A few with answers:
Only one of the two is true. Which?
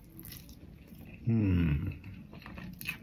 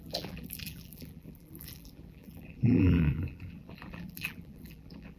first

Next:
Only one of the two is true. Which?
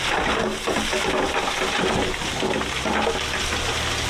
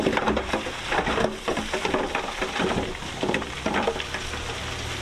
first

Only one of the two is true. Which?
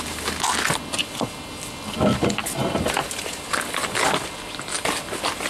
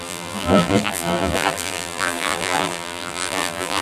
first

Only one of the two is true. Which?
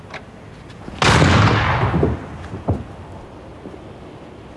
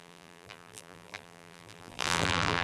first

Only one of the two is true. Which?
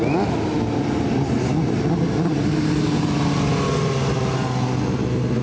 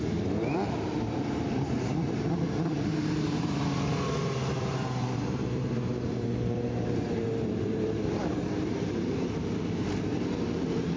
first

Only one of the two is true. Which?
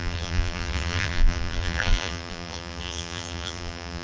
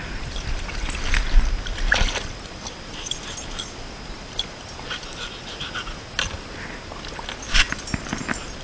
second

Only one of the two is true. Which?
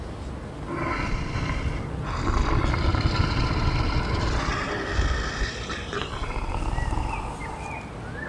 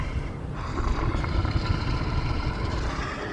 first